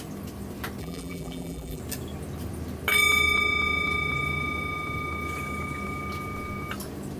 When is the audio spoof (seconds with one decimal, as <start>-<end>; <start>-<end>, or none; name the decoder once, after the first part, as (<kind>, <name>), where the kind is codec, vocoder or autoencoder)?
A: 0.8-1.8 (vocoder, BigVGAN v2)